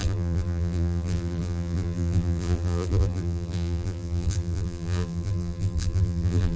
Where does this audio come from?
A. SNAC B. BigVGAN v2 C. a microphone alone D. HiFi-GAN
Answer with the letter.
B